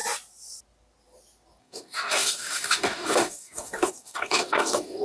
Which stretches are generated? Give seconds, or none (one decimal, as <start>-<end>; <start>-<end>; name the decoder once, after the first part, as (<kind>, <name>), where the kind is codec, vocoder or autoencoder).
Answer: 1.6-5.0 (codec, DAC)